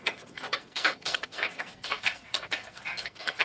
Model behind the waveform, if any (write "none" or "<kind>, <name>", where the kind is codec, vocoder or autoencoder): codec, SNAC